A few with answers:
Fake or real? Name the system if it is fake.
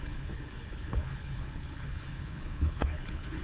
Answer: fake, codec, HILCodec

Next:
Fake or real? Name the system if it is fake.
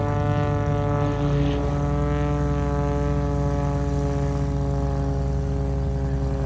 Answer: real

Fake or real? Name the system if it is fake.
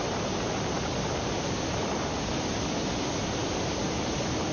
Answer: real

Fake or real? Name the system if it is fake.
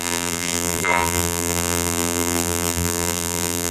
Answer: fake, vocoder, BigVGAN v2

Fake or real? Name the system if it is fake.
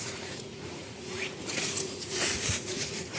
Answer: fake, vocoder, Vocos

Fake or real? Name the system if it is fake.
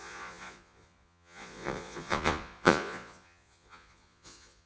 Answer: fake, vocoder, Vocos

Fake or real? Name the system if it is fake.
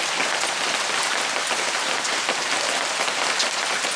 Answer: real